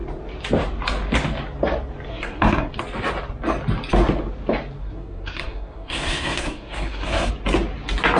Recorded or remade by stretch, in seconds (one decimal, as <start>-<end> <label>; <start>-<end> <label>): 0.0-2.1 recorded; 2.1-2.7 remade; 2.7-4.8 recorded; 4.8-7.3 remade; 7.3-8.2 recorded

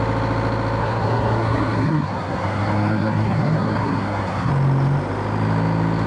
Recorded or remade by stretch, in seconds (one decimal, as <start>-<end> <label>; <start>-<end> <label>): 0.0-0.8 recorded; 0.8-4.5 remade; 4.5-6.1 recorded

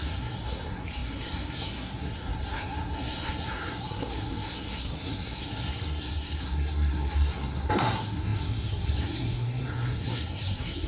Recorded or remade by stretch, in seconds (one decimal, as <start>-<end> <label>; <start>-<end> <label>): 0.0-10.9 remade